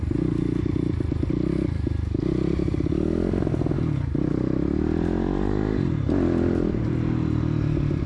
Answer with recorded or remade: recorded